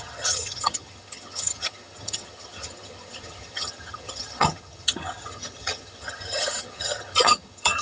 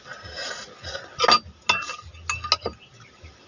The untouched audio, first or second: second